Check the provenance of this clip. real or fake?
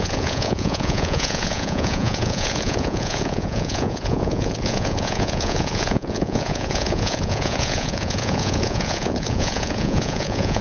fake